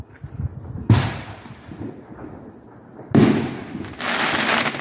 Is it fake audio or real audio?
real